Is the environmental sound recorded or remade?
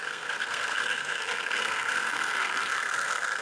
remade